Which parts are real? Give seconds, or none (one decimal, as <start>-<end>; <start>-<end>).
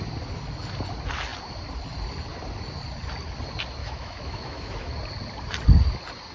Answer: 0.0-3.8; 4.9-6.3